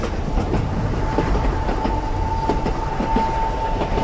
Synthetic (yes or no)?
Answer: no